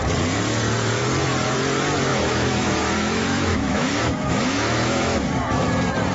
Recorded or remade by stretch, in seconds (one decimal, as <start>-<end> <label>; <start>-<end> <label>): 0.0-2.1 recorded; 2.1-5.2 remade; 5.2-6.1 recorded